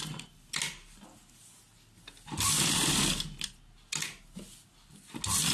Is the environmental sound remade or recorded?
recorded